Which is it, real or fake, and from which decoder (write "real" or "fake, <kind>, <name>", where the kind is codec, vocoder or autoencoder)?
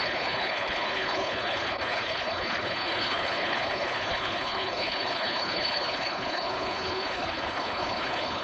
fake, codec, HILCodec